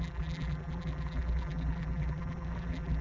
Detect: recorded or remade remade